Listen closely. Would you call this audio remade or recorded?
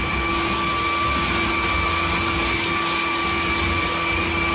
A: recorded